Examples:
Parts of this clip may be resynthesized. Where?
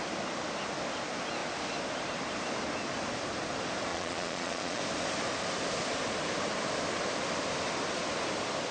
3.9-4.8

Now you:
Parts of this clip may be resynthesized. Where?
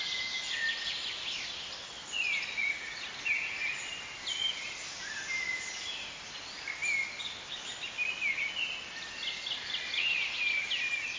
2.6-3.2; 5.7-6.2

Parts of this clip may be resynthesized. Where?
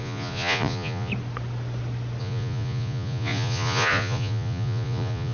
0.0-1.1; 2.2-5.3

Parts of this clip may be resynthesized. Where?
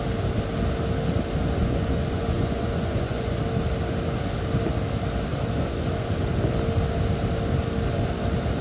1.6-3.4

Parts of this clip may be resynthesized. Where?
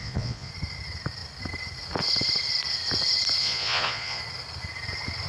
0.0-0.5; 3.4-4.2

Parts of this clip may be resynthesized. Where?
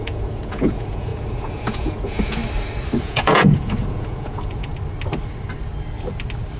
0.0-2.4; 3.0-4.7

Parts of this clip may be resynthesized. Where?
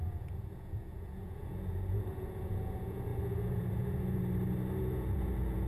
0.0-4.2; 4.8-5.7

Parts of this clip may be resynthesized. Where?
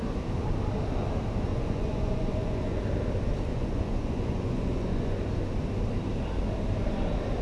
1.5-2.8; 3.5-5.2